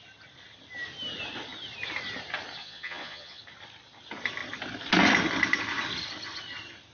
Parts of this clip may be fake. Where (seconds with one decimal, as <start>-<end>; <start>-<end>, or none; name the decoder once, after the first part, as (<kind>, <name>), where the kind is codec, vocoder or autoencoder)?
2.6-3.4 (vocoder, Vocos)